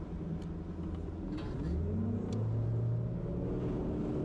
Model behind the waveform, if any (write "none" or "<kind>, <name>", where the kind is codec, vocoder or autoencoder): none